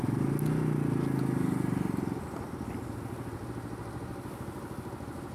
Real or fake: real